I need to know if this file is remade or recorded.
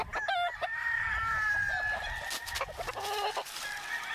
recorded